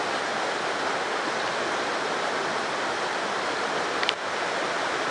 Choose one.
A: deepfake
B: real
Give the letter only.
B